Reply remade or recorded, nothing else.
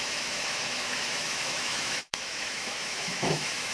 remade